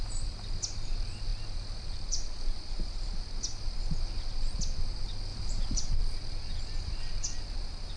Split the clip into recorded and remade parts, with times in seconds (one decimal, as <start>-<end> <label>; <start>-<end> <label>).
0.0-5.3 recorded; 5.3-5.9 remade; 5.9-8.0 recorded